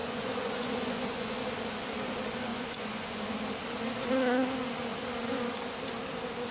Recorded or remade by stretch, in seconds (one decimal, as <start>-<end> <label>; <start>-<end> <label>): 0.0-1.3 remade; 1.3-2.5 recorded; 2.5-3.2 remade; 3.2-6.5 recorded